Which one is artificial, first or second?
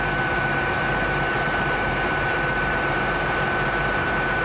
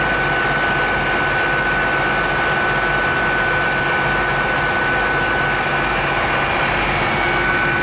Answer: first